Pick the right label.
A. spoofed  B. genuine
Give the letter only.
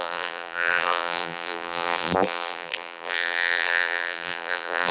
A